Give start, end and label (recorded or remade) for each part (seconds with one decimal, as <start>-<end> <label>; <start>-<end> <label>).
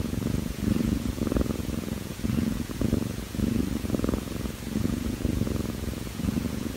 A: 0.0-6.8 remade